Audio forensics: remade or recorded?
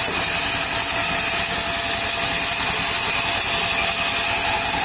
recorded